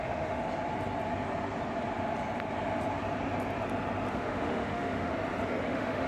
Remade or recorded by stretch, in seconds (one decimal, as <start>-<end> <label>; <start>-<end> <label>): 0.0-0.4 remade; 0.4-4.1 recorded; 4.1-5.1 remade; 5.1-5.6 recorded; 5.6-6.1 remade